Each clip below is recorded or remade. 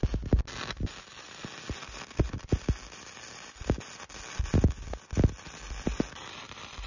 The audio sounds recorded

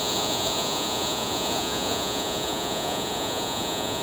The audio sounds remade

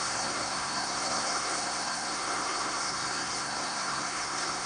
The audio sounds remade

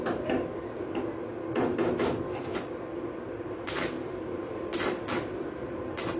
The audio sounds recorded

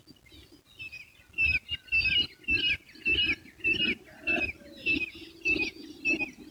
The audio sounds recorded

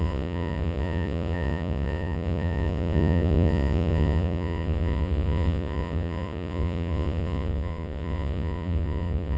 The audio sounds remade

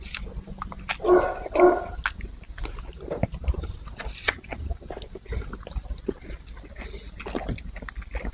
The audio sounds recorded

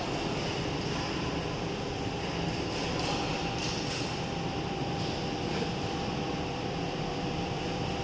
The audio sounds remade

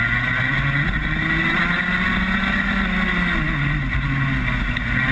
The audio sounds recorded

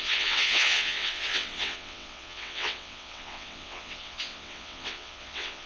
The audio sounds remade